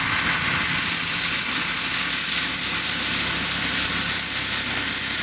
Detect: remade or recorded recorded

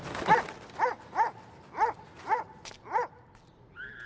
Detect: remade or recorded recorded